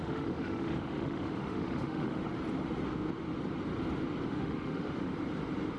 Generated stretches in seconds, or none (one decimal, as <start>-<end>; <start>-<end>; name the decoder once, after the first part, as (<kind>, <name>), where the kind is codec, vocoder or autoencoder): 0.0-2.2 (autoencoder, DAC-VAE); 4.3-5.1